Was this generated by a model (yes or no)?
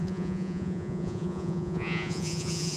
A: yes